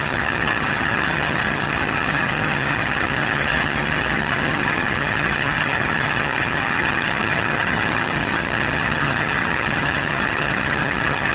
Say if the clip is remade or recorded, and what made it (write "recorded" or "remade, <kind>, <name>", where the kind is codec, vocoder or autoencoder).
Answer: remade, vocoder, HiFi-GAN